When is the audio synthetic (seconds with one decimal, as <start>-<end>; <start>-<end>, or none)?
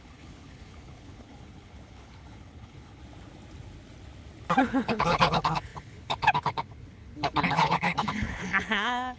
0.0-3.0; 4.6-9.2